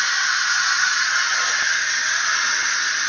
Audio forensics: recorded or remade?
recorded